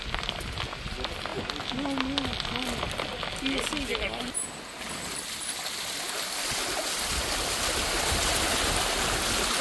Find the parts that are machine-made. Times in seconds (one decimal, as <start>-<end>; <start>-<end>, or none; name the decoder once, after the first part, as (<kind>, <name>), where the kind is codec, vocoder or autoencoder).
none